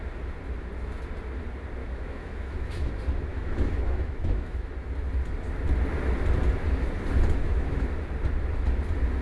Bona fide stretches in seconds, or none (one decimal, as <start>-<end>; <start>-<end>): 0.0-1.8; 2.9-3.3; 4.7-7.4; 7.9-9.2